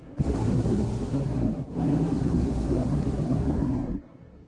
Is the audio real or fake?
fake